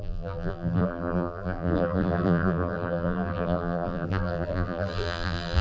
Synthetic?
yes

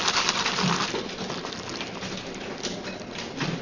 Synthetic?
no